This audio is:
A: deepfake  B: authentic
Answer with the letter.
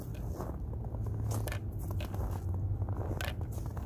B